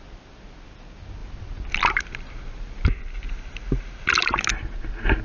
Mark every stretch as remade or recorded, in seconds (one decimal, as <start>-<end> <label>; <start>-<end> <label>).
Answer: 0.0-5.2 recorded